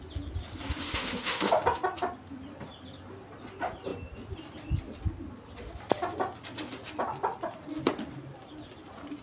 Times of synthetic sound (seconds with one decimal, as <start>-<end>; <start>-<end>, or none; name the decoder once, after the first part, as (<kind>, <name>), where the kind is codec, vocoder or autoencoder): 0.8-1.5 (autoencoder, DAC-VAE)